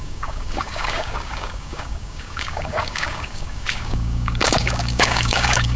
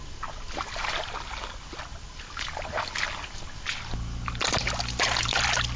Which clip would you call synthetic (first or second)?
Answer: first